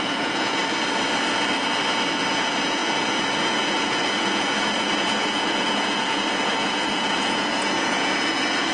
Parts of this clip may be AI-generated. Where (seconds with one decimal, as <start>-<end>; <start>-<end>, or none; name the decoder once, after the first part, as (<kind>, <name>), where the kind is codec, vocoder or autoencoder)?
0.0-0.6 (vocoder, Vocos); 2.3-8.7